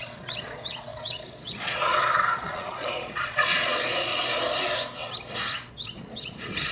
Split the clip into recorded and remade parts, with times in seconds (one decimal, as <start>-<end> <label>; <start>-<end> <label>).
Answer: 0.0-4.1 remade; 4.1-5.7 recorded; 5.7-6.7 remade